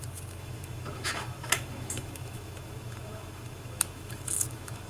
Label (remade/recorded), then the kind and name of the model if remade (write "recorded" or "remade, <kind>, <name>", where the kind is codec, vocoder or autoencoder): remade, autoencoder, DAC-VAE